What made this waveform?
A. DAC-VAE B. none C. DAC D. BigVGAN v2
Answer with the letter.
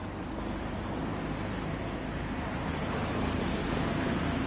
B